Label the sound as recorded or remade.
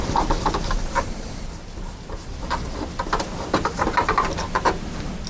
remade